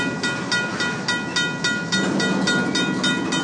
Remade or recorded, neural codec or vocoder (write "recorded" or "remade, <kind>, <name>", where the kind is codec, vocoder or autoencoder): recorded